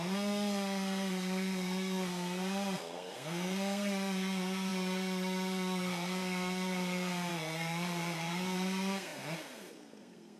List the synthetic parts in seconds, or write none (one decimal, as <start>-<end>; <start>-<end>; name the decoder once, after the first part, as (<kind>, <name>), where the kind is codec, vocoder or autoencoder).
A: 0.0-10.4 (codec, SNAC)